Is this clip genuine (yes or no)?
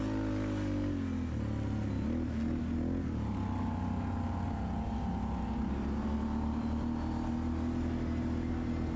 yes